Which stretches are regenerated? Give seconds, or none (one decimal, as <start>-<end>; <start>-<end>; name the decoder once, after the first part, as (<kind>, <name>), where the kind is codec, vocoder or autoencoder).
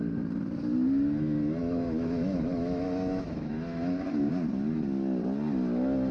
1.6-4.3 (autoencoder, DAC-VAE)